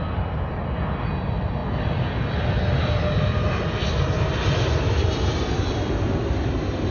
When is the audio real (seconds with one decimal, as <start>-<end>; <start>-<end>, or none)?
0.0-6.9